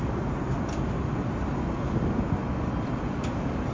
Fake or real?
real